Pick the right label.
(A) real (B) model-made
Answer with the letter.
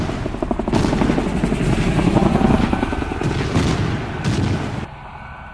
A